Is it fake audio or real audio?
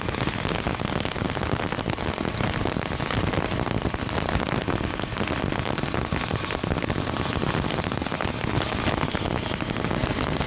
real